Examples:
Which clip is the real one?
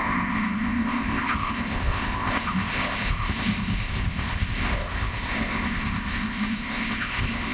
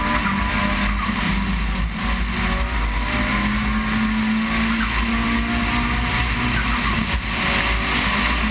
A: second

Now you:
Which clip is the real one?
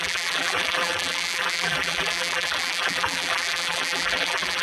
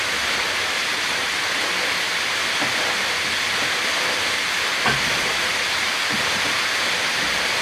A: second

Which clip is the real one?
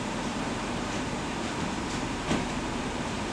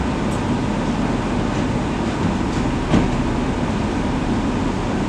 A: second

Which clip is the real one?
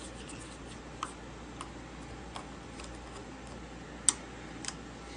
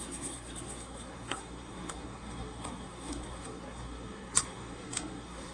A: first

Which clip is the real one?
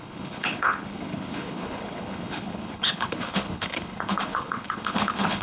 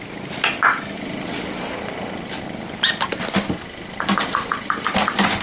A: second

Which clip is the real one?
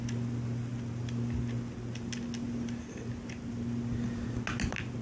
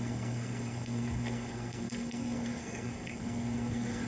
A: first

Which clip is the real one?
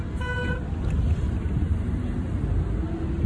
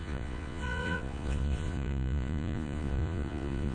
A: first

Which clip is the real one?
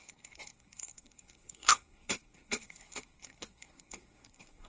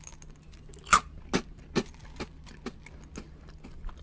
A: second